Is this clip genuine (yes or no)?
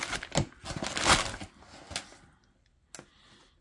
yes